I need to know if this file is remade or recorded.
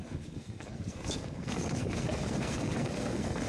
remade